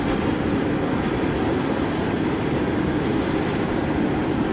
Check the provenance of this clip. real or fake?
fake